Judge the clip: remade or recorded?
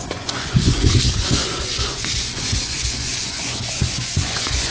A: remade